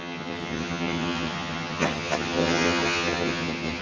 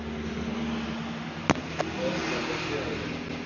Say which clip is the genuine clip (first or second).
second